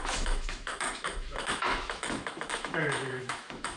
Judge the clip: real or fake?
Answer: fake